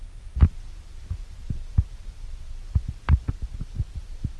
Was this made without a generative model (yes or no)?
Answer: yes